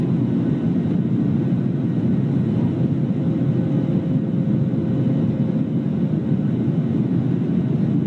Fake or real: real